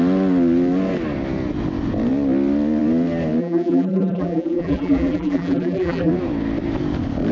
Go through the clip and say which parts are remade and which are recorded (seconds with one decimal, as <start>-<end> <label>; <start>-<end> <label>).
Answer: 0.0-3.4 recorded; 3.4-6.1 remade; 6.1-7.3 recorded